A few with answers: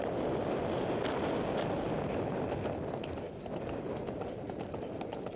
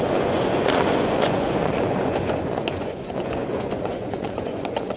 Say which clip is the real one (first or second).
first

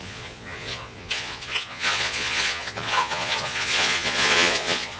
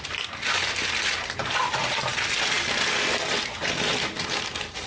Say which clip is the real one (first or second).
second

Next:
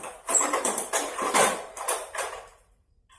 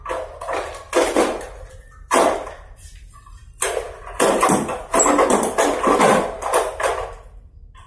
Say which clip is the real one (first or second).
second